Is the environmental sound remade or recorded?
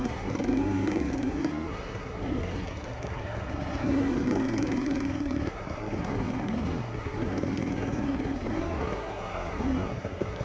remade